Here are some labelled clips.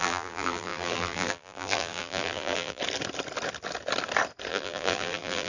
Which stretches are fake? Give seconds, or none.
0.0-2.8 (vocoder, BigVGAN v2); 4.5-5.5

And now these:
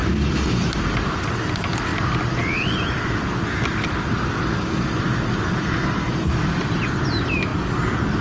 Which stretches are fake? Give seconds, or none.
none

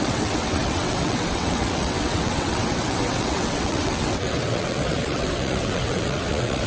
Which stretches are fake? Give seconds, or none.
0.0-6.7 (vocoder, WaveNeXt)